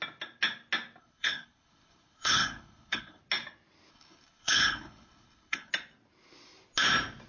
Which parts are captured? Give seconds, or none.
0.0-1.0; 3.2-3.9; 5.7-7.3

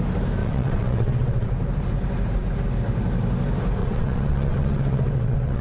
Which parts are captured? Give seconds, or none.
0.0-0.4; 1.5-3.8